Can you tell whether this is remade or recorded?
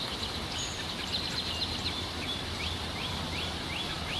recorded